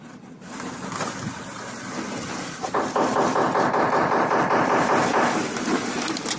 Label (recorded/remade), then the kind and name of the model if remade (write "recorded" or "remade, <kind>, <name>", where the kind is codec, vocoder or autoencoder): recorded